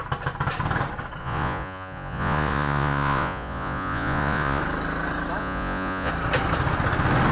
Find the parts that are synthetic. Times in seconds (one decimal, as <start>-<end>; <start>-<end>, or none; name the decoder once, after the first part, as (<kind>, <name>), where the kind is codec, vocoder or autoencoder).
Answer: 1.2-4.6 (vocoder, Vocos); 5.4-6.1

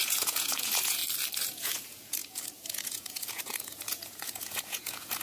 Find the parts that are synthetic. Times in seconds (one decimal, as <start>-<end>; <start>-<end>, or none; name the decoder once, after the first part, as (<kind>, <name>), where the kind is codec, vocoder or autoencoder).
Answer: 0.0-1.0 (vocoder, Vocos); 1.5-5.2